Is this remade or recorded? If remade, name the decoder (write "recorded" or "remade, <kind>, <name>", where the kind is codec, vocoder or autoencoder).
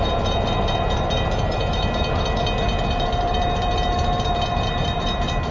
remade, vocoder, BigVGAN v2